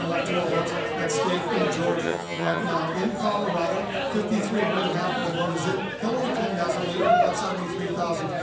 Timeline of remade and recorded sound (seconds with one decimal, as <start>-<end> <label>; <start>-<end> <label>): 0.0-2.0 recorded; 2.0-2.6 remade; 2.6-8.4 recorded